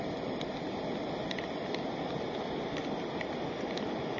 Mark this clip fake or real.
real